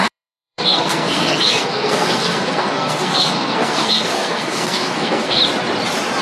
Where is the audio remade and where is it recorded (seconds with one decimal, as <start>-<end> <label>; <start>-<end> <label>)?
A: 0.0-5.4 remade; 5.4-6.2 recorded